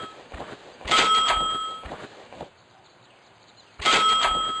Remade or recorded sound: remade